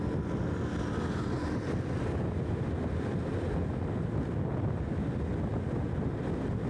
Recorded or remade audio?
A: recorded